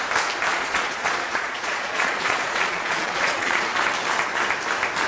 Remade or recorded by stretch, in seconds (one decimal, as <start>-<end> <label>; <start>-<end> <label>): 0.0-0.5 recorded; 0.5-3.6 remade; 3.6-5.1 recorded